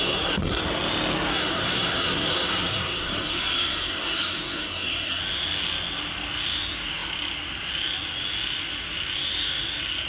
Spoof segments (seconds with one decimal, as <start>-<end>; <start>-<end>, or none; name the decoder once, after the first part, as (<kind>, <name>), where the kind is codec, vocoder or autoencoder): 0.0-0.6 (codec, SNAC); 1.3-5.2